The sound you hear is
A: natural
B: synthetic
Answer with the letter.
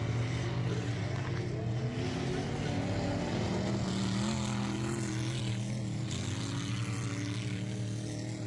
A